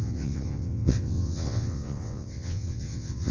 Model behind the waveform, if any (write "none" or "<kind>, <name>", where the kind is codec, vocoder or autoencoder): vocoder, WaveNeXt